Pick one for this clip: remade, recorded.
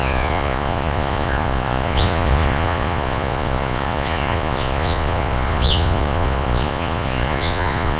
remade